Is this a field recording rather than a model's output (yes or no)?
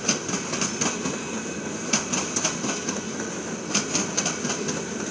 yes